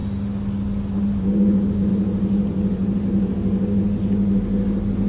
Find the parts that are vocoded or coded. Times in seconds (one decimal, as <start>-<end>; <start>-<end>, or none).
1.2-1.9